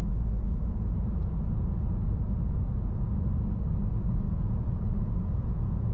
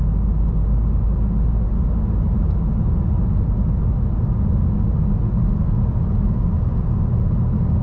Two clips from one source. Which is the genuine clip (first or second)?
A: second